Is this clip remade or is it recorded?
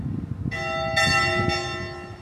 recorded